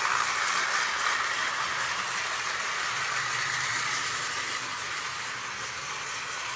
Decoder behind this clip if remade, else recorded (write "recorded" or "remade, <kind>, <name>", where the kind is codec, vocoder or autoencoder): recorded